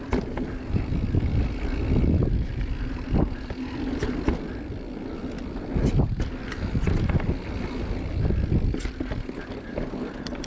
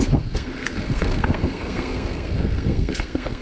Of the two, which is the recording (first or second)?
first